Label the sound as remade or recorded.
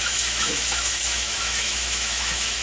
remade